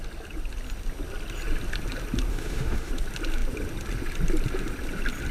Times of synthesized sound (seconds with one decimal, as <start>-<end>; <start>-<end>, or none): 2.3-2.9